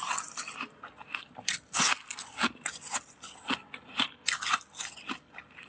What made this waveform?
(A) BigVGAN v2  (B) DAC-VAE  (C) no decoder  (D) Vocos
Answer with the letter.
C